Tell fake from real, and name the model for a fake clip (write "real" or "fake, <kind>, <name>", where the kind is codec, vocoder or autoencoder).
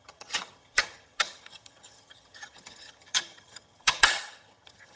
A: fake, vocoder, HiFi-GAN